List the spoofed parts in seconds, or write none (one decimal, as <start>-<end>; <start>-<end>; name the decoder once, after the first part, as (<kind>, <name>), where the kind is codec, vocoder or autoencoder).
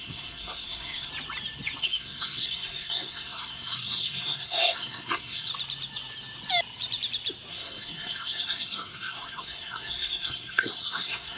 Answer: 0.0-1.1 (codec, SNAC); 1.8-5.5; 7.5-11.4